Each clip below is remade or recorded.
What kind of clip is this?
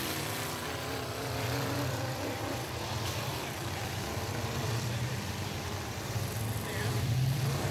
remade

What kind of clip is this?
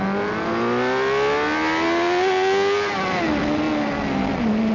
recorded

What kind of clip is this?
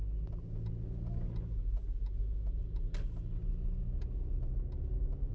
recorded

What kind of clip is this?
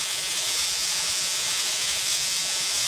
remade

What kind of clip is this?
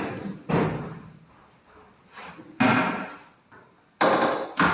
recorded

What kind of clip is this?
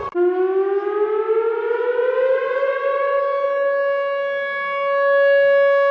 recorded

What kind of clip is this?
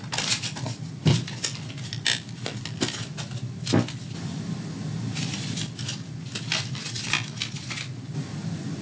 recorded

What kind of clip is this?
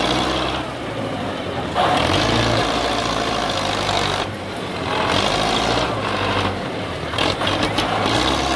remade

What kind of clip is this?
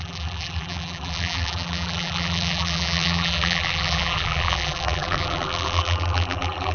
remade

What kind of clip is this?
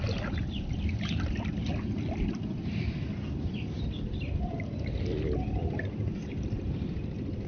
recorded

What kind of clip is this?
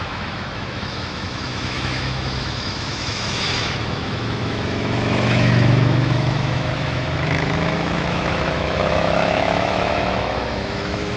remade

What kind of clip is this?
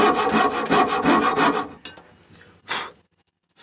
recorded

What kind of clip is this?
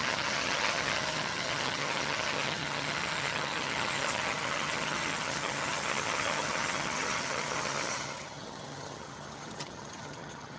remade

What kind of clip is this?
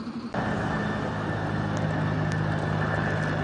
recorded